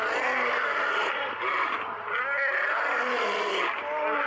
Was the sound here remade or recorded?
recorded